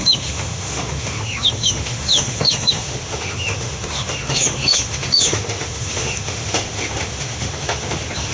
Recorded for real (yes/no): no